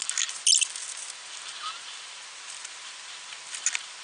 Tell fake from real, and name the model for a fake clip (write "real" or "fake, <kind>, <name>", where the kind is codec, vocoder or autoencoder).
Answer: real